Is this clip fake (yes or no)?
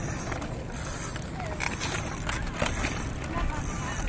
no